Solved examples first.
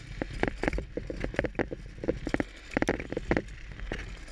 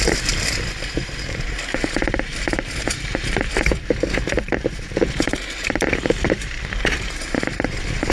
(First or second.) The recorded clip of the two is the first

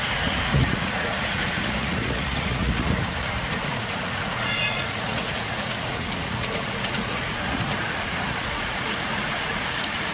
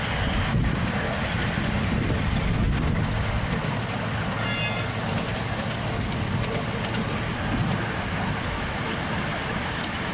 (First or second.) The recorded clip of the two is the second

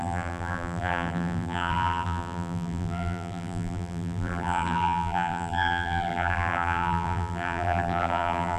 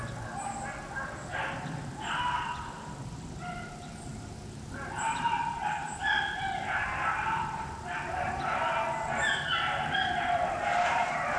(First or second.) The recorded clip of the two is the second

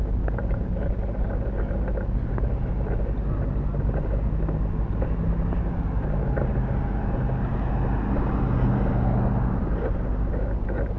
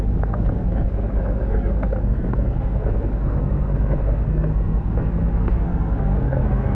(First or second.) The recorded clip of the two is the first